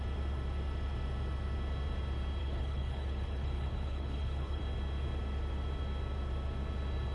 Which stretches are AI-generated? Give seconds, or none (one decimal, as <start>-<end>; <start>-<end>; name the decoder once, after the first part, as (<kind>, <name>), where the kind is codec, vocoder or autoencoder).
2.4-4.6 (codec, HILCodec)